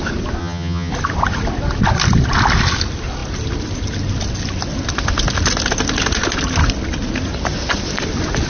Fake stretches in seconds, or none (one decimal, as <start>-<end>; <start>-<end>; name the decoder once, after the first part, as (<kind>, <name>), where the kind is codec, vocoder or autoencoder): 0.4-0.9 (vocoder, HiFi-GAN)